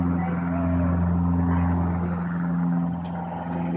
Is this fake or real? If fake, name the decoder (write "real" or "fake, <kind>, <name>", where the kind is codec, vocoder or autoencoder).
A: real